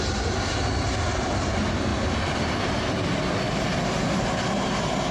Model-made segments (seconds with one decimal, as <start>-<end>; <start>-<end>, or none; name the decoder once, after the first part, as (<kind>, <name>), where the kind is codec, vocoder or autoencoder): none